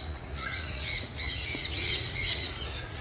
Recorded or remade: remade